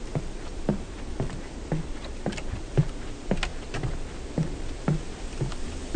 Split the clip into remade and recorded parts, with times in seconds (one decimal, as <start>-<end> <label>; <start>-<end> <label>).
0.0-6.0 recorded